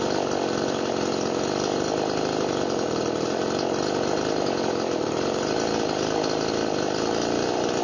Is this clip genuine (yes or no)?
yes